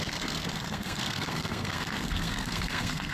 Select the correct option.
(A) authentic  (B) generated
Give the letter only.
B